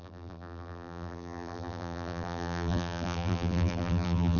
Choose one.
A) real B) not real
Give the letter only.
B